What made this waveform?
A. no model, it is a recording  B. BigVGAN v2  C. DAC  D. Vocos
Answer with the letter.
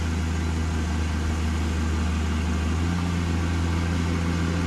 A